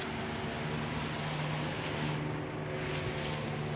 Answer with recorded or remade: recorded